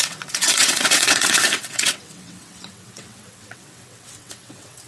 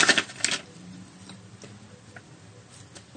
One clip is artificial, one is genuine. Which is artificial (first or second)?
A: first